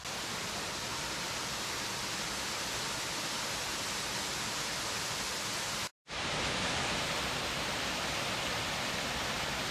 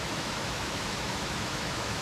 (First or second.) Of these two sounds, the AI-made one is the second